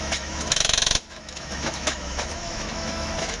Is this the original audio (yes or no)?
no